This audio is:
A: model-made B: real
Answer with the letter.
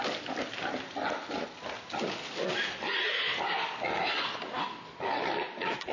B